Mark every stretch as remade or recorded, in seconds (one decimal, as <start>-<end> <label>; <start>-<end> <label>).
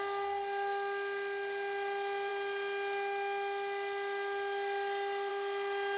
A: 0.0-6.0 recorded